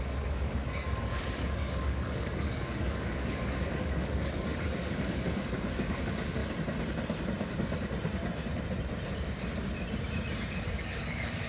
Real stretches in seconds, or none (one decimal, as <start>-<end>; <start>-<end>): 6.4-10.6